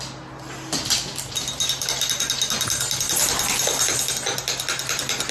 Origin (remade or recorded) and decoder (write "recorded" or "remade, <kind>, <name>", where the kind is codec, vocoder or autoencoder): recorded